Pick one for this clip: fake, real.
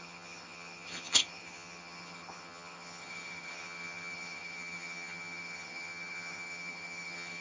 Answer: fake